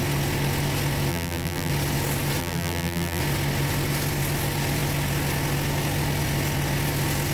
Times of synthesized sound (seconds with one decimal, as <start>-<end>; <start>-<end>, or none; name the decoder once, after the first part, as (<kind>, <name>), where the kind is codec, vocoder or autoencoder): 1.1-1.7 (vocoder, BigVGAN v2); 2.4-3.2